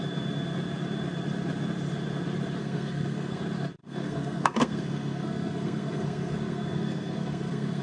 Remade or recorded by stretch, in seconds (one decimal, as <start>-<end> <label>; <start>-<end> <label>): 0.0-2.6 recorded; 2.6-3.4 remade; 3.4-3.8 recorded; 3.8-7.8 remade